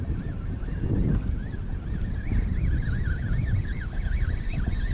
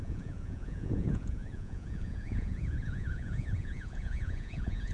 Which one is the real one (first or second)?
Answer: first